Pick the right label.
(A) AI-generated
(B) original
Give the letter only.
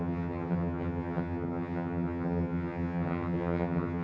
A